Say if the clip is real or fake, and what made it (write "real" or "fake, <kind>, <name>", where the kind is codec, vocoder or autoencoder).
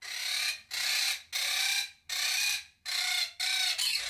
real